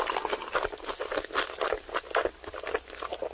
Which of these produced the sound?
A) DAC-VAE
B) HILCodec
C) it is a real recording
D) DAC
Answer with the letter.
C